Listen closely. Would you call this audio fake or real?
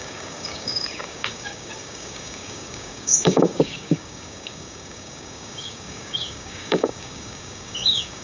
fake